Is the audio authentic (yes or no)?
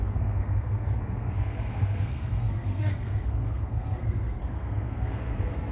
no